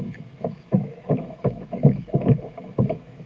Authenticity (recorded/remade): remade